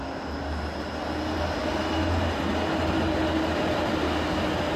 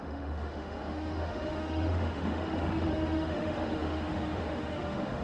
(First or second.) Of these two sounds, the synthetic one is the second